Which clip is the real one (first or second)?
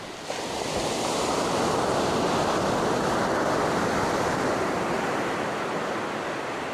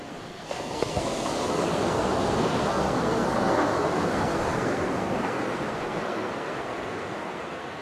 first